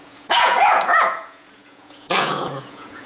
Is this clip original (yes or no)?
no